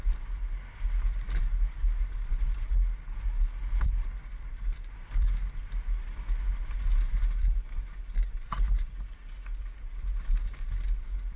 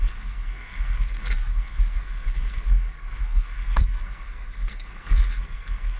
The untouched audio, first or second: first